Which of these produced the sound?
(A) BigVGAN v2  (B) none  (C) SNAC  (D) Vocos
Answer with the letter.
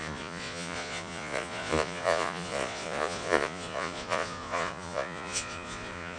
D